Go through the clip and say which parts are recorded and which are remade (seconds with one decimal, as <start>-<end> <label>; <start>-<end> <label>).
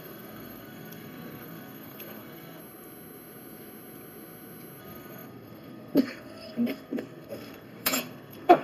0.0-2.6 remade; 2.6-4.8 recorded; 4.8-8.6 remade